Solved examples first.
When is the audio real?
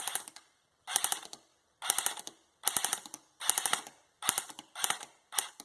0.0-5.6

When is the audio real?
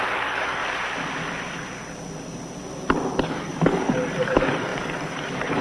0.6-3.2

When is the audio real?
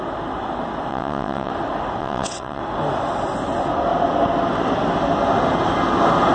0.0-0.9; 1.5-2.0; 2.6-6.3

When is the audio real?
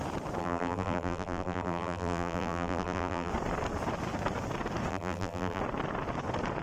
0.0-0.4; 3.3-4.9; 5.6-6.6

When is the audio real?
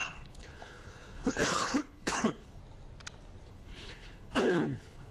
2.6-3.5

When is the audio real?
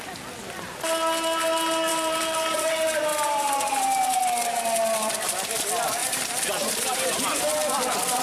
0.0-1.9; 2.7-3.1; 4.2-6.0; 7.4-8.2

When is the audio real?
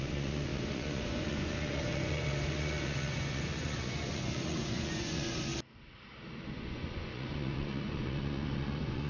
5.5-6.5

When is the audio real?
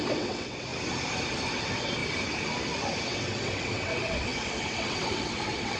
0.7-1.5; 2.0-3.1